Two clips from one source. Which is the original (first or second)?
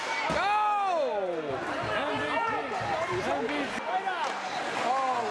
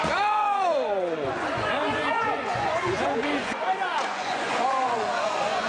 first